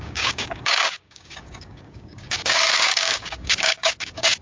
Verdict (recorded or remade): remade